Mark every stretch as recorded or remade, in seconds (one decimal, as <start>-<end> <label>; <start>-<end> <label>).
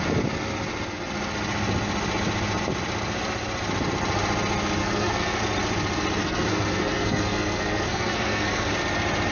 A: 0.0-4.8 recorded; 4.8-5.4 remade; 5.4-6.2 recorded; 6.2-8.7 remade; 8.7-9.3 recorded